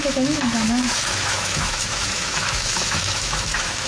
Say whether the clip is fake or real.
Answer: fake